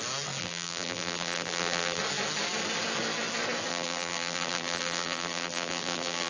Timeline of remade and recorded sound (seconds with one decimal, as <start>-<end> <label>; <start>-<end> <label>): 0.0-0.4 recorded; 0.4-2.0 remade; 2.0-3.7 recorded; 3.7-6.3 remade